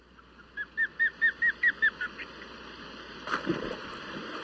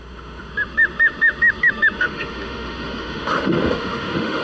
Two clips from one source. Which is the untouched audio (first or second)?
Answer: first